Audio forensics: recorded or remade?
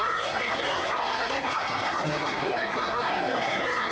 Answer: remade